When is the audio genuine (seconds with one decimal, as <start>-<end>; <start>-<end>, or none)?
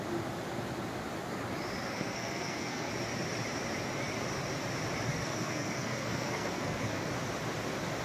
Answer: 0.0-1.8; 2.9-5.1; 7.1-8.0